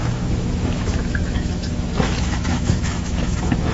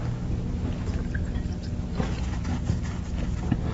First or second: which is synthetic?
first